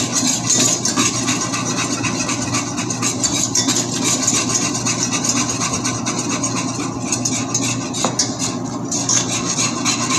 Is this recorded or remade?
recorded